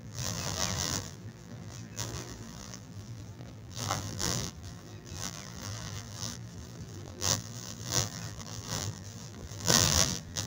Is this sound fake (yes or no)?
yes